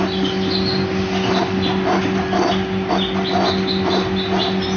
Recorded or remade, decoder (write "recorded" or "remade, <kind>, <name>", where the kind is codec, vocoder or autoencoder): recorded